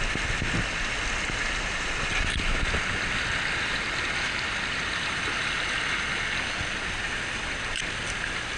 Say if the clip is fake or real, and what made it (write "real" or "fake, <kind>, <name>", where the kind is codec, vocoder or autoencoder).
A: real